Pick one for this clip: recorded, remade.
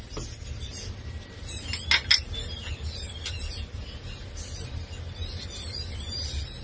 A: recorded